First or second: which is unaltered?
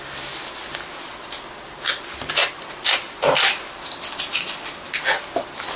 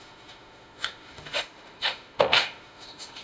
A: first